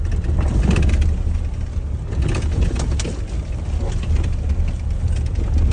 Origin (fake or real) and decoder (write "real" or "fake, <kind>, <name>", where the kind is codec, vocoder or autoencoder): real